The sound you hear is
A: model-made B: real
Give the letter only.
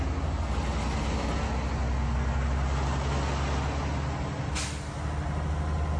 B